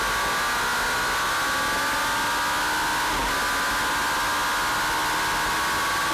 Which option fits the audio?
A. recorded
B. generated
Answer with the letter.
A